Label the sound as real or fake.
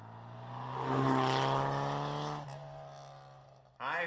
real